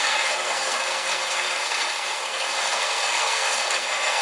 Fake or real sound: fake